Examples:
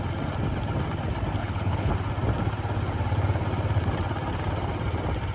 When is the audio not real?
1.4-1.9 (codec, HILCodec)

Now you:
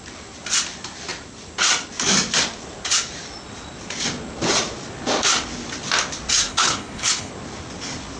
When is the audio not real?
6.5-7.3 (codec, HILCodec)